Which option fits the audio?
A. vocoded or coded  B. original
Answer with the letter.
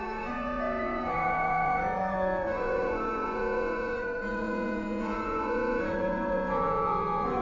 A